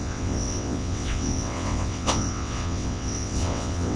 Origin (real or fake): fake